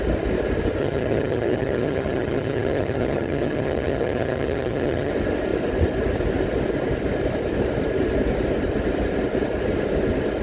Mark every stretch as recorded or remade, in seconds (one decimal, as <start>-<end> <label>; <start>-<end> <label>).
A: 0.0-0.8 recorded; 0.8-5.1 remade; 5.1-10.4 recorded